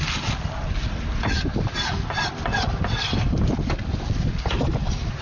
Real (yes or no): yes